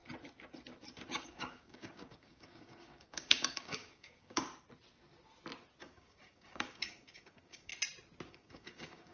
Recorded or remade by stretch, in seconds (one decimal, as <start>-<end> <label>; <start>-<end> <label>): 0.0-1.1 recorded; 1.1-4.5 remade; 4.5-5.8 recorded; 5.8-7.7 remade; 7.7-8.3 recorded; 8.3-9.1 remade